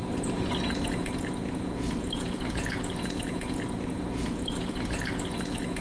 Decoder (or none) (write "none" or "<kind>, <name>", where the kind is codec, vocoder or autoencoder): vocoder, Vocos